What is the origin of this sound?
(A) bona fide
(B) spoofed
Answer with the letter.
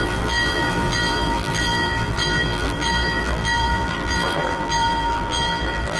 B